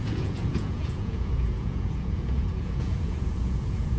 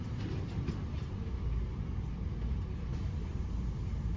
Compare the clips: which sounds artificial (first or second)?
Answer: first